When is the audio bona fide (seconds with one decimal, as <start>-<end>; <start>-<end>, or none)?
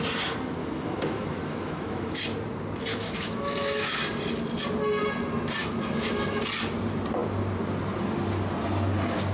0.0-0.6; 2.2-2.9; 4.0-5.6; 6.4-9.3